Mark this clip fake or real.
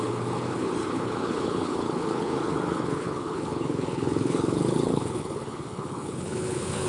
fake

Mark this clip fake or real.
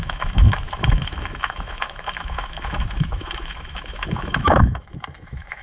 fake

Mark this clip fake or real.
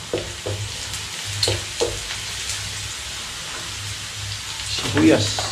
real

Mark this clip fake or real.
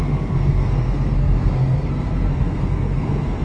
fake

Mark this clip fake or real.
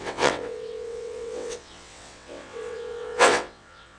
fake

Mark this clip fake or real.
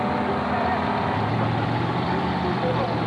real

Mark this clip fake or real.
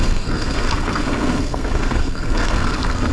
fake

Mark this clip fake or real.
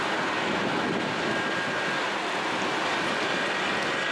real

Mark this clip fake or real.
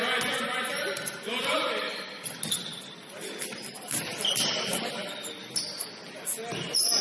real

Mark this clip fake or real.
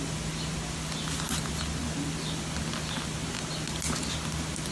real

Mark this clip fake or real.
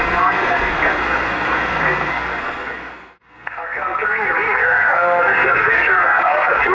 fake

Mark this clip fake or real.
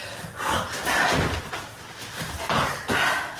real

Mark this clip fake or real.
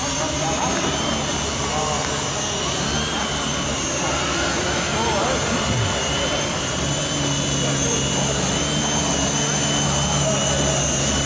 real